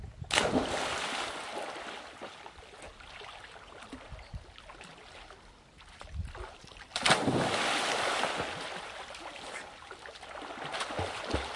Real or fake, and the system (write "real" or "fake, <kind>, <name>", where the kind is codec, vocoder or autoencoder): real